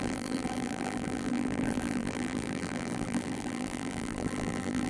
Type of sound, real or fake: fake